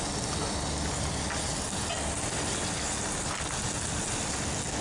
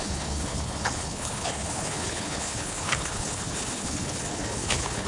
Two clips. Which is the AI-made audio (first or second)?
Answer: second